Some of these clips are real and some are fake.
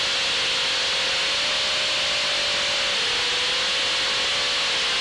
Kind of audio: real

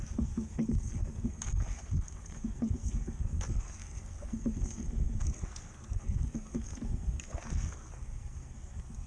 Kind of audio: fake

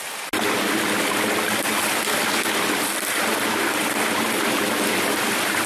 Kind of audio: real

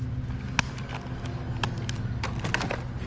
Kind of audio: real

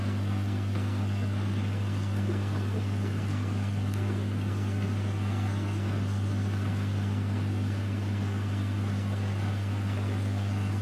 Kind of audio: fake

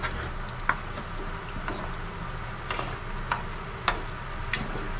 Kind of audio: real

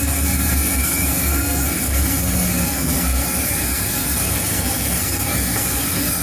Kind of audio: fake